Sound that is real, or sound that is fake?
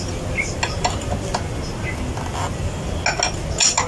real